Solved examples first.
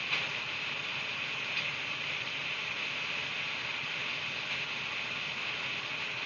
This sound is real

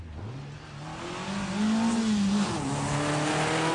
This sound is real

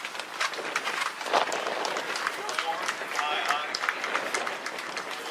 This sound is real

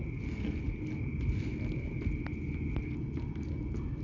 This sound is real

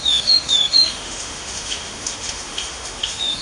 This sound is fake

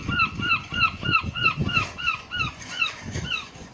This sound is fake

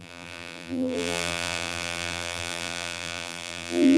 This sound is fake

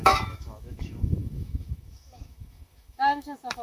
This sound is fake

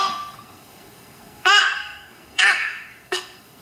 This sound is fake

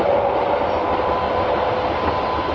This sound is real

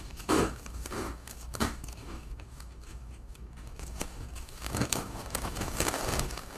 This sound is fake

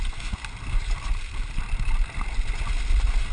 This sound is real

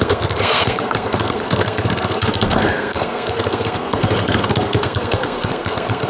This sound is fake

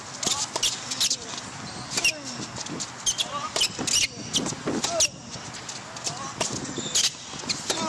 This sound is real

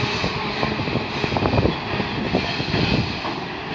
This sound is real